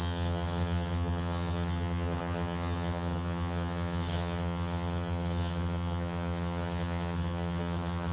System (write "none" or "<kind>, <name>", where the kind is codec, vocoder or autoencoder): vocoder, HiFi-GAN